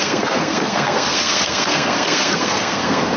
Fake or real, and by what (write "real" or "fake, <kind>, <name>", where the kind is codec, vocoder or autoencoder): fake, codec, SNAC